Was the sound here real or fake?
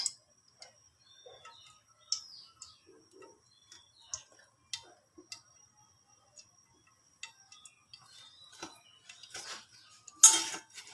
real